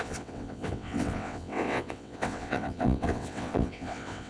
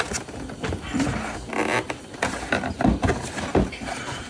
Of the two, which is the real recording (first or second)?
second